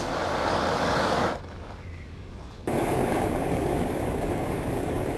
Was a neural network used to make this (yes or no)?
yes